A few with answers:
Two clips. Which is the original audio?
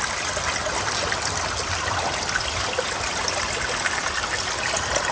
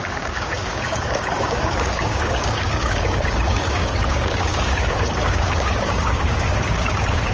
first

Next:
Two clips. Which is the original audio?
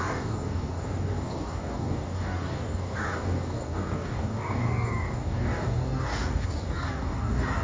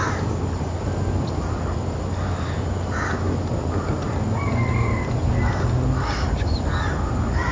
second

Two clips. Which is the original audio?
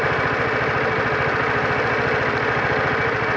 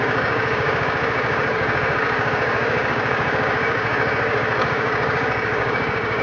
first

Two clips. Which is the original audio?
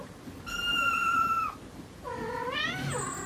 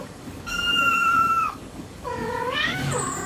first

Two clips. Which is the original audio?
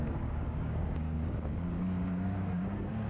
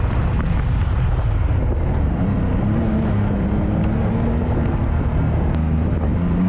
second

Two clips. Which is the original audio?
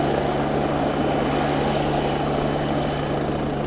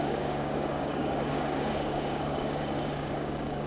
first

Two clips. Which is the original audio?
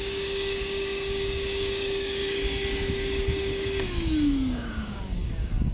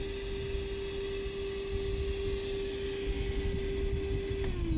second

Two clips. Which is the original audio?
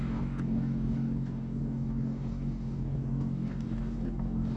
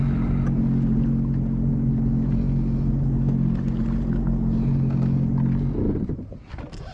second